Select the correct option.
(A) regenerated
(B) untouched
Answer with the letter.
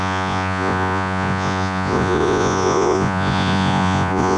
A